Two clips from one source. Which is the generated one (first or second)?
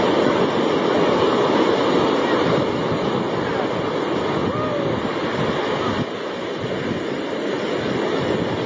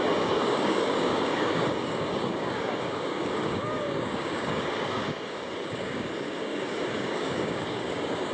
second